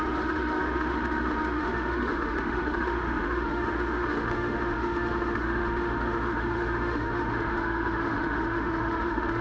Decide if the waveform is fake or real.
fake